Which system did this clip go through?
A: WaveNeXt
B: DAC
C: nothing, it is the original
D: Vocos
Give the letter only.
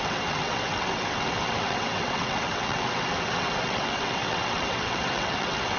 A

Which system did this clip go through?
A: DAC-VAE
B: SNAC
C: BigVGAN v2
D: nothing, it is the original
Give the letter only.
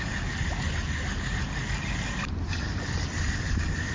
D